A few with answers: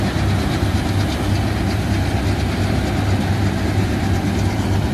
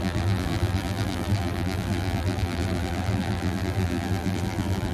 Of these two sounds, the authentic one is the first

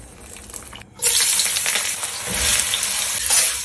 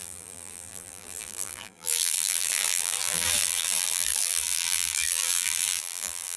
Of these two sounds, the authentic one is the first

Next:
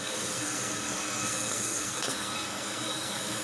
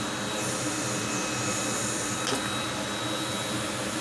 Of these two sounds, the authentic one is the second